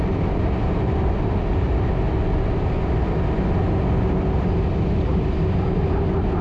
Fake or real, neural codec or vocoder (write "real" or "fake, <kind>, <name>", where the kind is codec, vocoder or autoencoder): real